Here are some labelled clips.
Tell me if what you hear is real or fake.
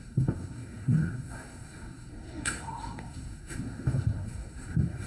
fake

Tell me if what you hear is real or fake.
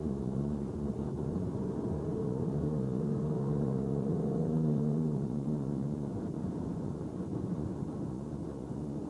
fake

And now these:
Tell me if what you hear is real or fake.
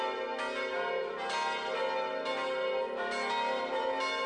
real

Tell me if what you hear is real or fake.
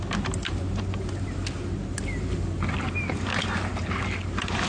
real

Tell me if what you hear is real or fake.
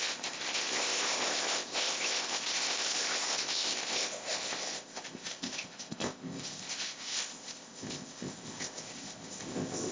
fake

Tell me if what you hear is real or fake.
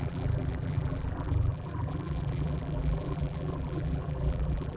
fake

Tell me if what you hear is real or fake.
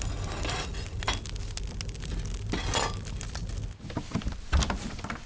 real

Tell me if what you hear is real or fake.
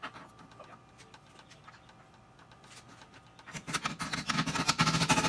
real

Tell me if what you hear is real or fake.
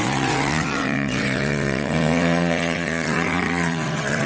fake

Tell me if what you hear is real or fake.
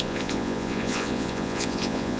fake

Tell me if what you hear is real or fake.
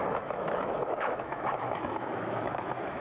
fake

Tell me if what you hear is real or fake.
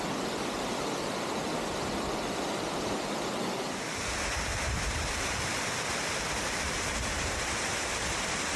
fake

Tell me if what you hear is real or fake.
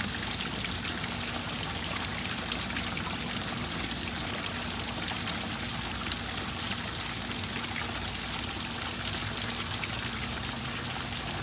real